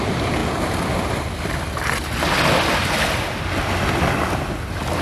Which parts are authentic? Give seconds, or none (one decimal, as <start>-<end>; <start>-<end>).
0.0-5.0